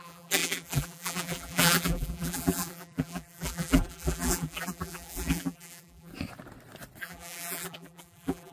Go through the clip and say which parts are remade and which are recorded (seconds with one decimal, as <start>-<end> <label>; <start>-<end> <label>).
0.0-6.1 remade; 6.1-7.0 recorded; 7.0-8.5 remade